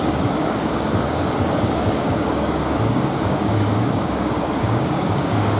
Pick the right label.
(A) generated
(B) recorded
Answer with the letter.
A